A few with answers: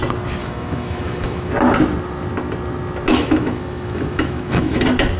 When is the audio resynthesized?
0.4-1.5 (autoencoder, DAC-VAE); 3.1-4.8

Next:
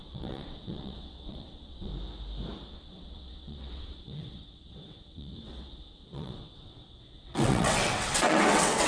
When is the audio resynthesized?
0.0-1.9 (vocoder, WaveNeXt); 2.7-8.9

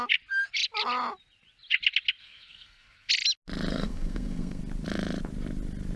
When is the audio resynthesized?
2.2-3.1 (codec, SNAC); 3.7-4.6

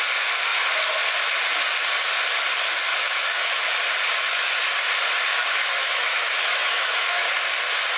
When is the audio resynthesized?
2.9-3.6 (autoencoder, DAC-VAE); 5.4-7.3

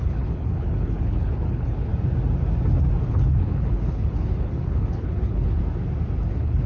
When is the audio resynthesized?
0.0-1.9 (codec, HILCodec); 3.1-5.6; 6.3-6.7